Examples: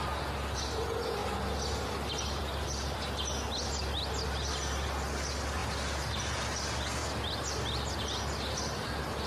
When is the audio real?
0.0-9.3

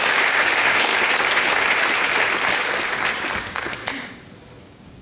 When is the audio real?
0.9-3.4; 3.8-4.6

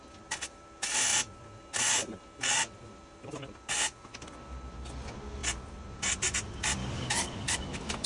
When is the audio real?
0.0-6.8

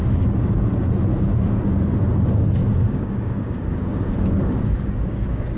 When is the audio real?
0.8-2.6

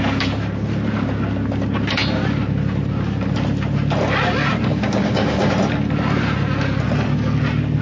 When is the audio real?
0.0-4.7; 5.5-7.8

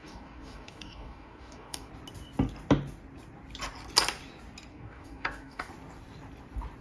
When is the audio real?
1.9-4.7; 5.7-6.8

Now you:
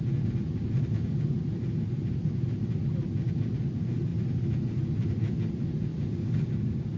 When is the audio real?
0.0-5.9

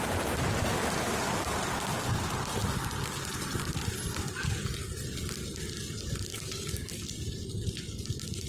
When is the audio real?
0.0-6.3; 6.9-8.5